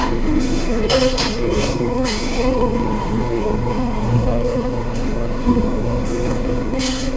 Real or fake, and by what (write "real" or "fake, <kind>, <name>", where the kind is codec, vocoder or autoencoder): fake, codec, SNAC